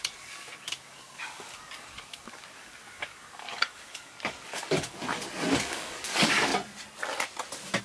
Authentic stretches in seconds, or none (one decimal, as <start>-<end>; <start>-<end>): 5.0-5.6; 6.5-7.8